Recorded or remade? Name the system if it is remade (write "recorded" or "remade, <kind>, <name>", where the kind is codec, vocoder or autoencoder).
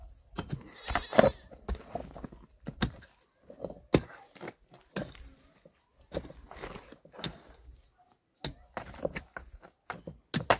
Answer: recorded